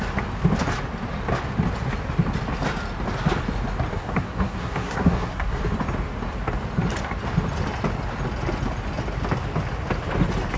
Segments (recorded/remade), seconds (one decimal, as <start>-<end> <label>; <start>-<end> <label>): 0.0-3.9 recorded; 3.9-5.6 remade; 5.6-10.6 recorded